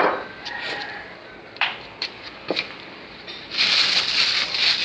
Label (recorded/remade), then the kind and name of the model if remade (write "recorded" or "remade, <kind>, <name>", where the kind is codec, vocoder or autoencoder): remade, vocoder, BigVGAN v2